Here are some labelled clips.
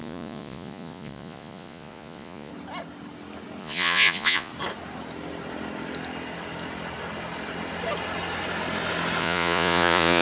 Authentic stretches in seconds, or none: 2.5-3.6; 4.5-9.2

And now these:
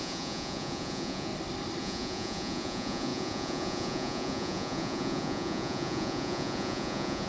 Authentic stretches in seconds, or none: 1.3-1.8

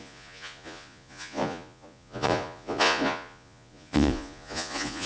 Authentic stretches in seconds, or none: none

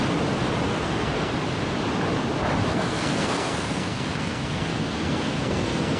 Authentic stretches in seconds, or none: 0.0-0.7; 1.3-2.7